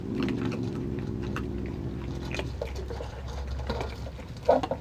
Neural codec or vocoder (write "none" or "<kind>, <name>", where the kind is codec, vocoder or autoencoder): none